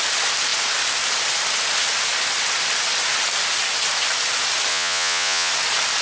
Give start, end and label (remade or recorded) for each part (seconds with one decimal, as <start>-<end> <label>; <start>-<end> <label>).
0.0-4.7 recorded; 4.7-5.5 remade; 5.5-6.0 recorded